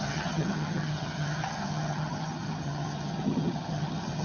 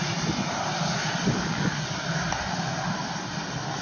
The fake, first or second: first